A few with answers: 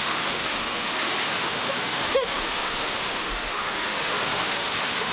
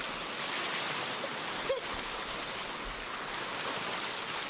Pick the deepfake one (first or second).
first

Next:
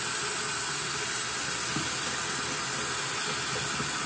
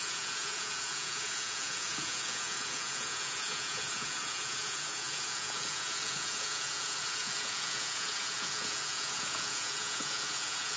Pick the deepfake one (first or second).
second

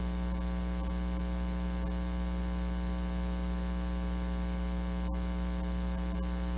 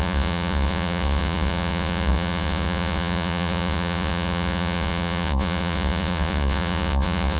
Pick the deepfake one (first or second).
second